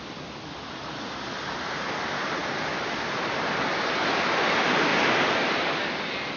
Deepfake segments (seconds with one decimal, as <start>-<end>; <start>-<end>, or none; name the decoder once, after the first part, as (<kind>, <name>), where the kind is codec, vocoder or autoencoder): none